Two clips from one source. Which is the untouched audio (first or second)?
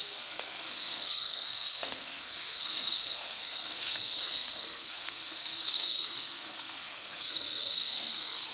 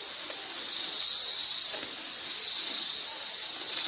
second